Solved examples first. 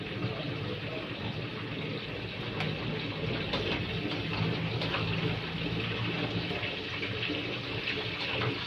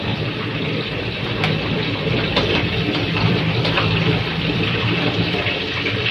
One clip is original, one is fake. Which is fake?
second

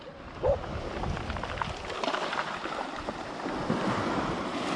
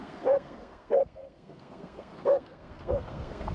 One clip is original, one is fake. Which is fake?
second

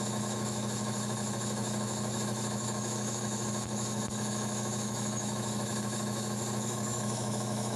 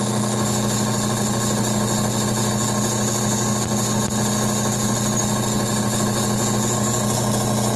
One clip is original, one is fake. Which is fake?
first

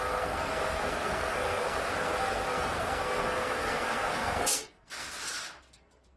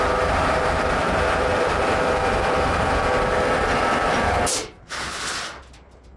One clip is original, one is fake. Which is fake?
first